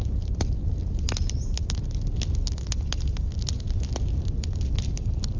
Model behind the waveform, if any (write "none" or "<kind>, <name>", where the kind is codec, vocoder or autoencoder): none